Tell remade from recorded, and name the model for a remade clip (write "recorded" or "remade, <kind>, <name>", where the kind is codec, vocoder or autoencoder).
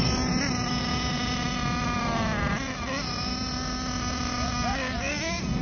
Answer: recorded